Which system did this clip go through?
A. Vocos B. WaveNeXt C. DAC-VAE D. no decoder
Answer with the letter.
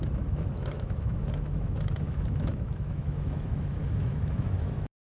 C